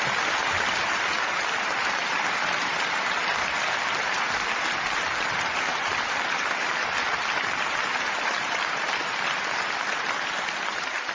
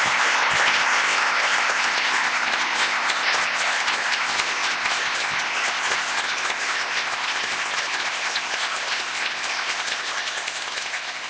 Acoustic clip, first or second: first